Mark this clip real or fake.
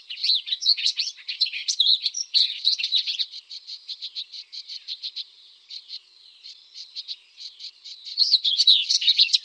fake